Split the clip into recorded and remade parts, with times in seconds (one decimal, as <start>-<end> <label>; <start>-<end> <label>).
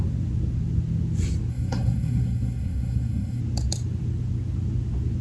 0.0-1.5 recorded; 1.5-3.4 remade; 3.4-5.2 recorded